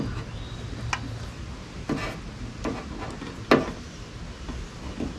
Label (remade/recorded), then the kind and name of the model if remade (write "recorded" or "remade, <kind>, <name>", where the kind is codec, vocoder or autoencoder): recorded